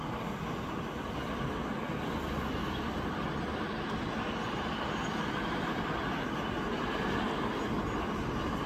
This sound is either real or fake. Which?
real